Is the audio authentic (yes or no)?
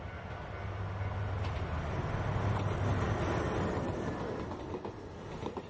yes